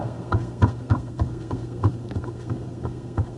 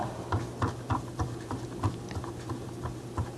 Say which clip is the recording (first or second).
second